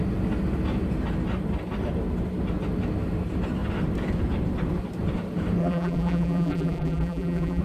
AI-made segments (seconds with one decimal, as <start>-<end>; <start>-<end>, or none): 5.6-7.6